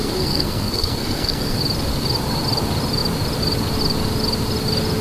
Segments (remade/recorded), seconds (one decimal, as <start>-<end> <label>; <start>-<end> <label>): 0.0-1.6 remade; 1.6-5.0 recorded